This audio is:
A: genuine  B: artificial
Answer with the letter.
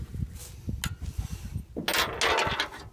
A